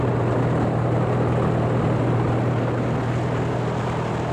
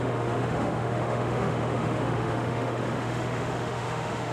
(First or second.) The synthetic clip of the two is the second